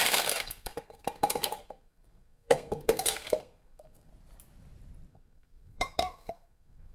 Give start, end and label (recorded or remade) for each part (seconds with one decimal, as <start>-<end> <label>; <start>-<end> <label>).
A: 0.0-4.1 remade; 4.1-5.1 recorded; 5.1-6.9 remade